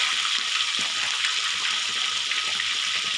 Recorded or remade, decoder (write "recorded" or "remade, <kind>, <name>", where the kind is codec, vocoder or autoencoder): recorded